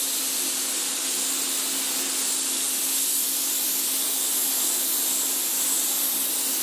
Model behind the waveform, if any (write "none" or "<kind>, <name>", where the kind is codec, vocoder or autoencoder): none